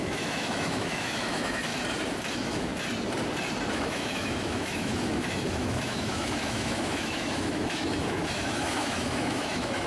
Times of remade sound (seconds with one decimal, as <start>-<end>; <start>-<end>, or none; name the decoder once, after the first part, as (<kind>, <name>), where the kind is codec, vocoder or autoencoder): 0.0-1.7 (autoencoder, DAC-VAE); 2.3-2.7; 3.7-9.9